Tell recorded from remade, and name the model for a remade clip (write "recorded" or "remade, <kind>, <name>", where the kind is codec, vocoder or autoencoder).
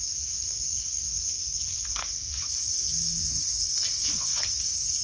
remade, codec, SNAC